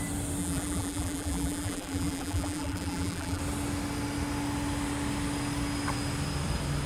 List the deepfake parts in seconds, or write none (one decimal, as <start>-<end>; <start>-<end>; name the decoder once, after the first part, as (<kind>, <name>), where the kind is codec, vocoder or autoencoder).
0.4-3.4 (vocoder, BigVGAN v2)